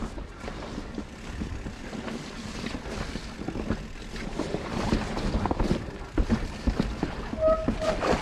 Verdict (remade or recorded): recorded